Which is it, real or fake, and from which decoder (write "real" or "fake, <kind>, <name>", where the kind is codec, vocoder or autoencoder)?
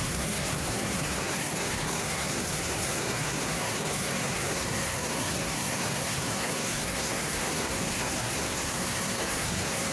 fake, codec, SNAC